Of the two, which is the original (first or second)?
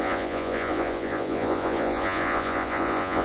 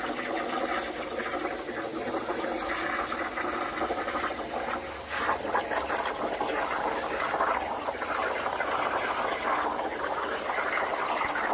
second